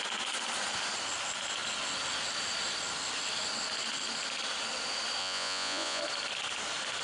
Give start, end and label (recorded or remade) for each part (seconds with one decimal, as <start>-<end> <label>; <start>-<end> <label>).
0.0-5.2 recorded; 5.2-6.0 remade; 6.0-7.0 recorded